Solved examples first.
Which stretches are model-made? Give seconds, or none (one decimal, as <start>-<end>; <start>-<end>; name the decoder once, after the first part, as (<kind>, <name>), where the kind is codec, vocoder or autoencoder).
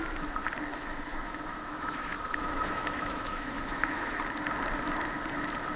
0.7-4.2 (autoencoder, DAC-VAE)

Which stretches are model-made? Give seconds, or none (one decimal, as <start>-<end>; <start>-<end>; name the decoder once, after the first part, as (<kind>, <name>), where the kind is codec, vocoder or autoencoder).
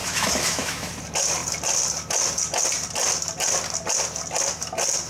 0.0-0.9 (autoencoder, DAC-VAE)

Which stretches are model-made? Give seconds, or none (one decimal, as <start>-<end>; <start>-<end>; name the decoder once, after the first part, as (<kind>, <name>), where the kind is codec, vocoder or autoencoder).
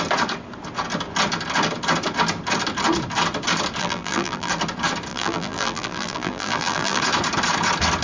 3.8-4.5 (vocoder, BigVGAN v2); 5.1-7.0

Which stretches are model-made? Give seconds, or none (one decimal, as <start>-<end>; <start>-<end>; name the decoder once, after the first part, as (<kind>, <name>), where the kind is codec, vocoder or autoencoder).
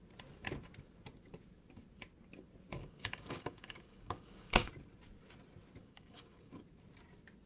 2.8-4.7 (codec, DAC); 5.8-6.5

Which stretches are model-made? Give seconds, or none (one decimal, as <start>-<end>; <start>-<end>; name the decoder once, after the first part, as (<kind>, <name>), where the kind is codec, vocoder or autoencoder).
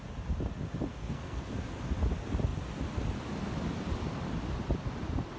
0.9-1.5 (codec, SNAC)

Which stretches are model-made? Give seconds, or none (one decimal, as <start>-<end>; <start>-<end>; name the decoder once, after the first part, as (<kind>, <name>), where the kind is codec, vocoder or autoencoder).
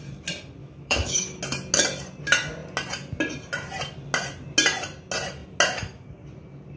0.6-1.4 (autoencoder, DAC-VAE)